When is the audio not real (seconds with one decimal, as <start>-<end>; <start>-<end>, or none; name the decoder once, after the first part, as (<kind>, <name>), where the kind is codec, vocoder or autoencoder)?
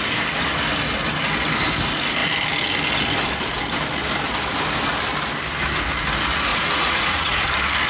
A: 6.5-7.4 (vocoder, Vocos)